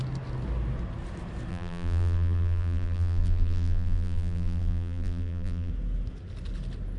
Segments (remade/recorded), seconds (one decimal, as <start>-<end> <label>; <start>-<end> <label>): 0.0-1.5 recorded; 1.5-5.7 remade; 5.7-7.0 recorded